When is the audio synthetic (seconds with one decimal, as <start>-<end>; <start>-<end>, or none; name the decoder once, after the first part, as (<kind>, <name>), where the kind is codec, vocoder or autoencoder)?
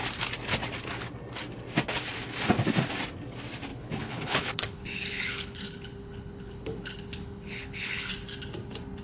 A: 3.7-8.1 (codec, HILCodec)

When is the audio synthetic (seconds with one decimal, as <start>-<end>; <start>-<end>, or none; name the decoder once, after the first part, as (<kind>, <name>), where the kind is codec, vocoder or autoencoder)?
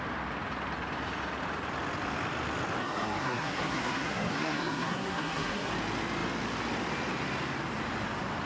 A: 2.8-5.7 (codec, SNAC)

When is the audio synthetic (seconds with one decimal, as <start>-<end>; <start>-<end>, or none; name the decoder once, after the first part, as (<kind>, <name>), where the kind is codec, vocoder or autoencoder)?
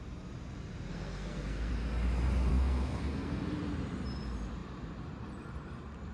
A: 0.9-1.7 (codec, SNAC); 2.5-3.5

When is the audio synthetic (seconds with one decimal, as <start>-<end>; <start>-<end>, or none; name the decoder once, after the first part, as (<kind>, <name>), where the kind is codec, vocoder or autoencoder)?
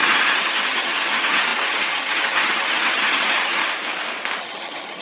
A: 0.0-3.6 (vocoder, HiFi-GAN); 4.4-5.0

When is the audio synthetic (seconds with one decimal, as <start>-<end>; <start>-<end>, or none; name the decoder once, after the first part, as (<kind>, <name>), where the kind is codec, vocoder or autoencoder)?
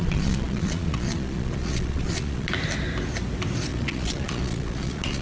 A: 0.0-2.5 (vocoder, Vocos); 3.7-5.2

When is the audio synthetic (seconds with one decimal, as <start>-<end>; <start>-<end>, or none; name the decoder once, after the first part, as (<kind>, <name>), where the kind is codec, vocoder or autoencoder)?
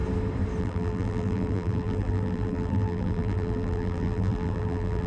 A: 0.6-5.1 (vocoder, BigVGAN v2)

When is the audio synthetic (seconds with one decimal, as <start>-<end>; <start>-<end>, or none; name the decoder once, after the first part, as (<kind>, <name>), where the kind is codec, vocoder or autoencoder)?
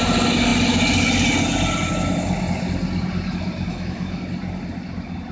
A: 3.7-4.2 (autoencoder, DAC-VAE)